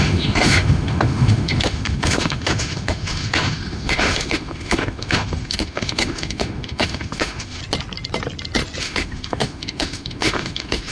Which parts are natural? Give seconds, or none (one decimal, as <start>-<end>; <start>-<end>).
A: 7.6-8.8